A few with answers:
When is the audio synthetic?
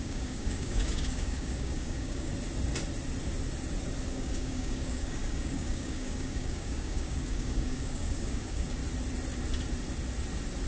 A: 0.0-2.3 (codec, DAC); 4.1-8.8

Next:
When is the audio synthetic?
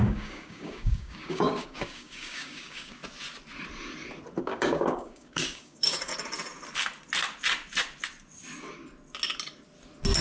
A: 0.0-3.0 (codec, DAC); 4.4-6.1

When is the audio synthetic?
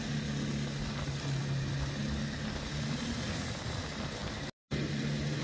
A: none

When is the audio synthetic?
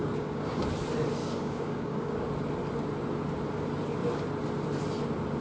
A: 0.0-0.6 (codec, DAC); 1.2-2.3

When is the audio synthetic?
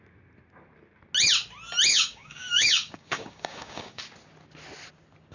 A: 1.9-4.0 (codec, DAC)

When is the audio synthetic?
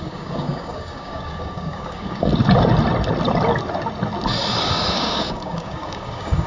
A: 0.0-2.3 (codec, DAC); 4.9-6.5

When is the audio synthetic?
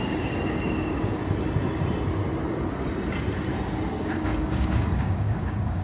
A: 0.0-1.2 (codec, DAC); 4.0-5.8